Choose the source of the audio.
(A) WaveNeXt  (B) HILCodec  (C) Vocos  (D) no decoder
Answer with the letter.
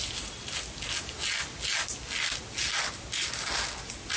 D